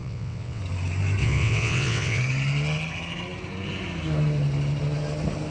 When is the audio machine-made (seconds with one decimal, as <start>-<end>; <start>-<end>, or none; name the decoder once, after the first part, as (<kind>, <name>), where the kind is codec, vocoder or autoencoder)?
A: 0.0-0.6 (vocoder, WaveNeXt); 1.2-2.2